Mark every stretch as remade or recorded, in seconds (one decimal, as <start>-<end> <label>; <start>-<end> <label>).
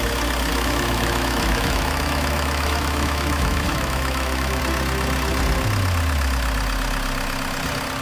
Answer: 0.0-0.5 recorded; 0.5-4.6 remade; 4.6-8.0 recorded